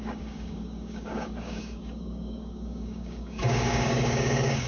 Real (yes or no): no